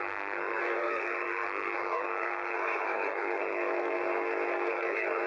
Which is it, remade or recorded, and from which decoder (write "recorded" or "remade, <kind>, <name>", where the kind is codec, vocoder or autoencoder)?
remade, codec, SNAC